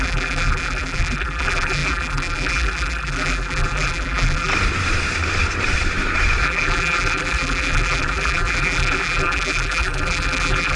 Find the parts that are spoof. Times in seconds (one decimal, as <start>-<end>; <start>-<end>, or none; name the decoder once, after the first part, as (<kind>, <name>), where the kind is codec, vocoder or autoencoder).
0.0-4.5 (vocoder, BigVGAN v2); 6.4-10.8